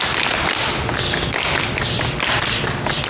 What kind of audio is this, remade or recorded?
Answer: recorded